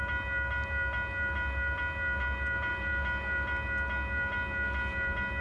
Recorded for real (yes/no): yes